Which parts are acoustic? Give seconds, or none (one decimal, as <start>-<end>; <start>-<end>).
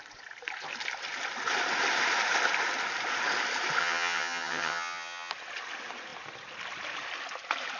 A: 0.0-3.8; 5.3-7.8